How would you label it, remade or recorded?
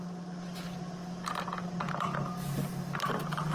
recorded